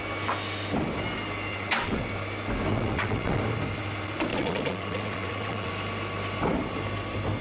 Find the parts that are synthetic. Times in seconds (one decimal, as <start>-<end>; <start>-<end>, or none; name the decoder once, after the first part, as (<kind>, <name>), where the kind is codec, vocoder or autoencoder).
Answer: 1.5-2.0 (vocoder, WaveNeXt); 2.7-3.4; 4.3-5.7